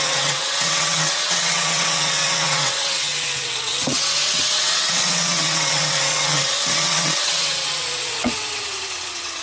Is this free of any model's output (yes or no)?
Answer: no